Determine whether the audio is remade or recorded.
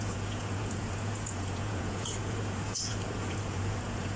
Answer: remade